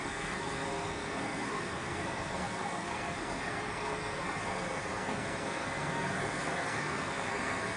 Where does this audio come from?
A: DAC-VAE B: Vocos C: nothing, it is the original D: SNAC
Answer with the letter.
D